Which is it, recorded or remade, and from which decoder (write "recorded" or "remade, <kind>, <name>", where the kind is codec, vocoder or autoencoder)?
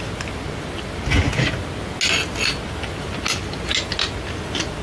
recorded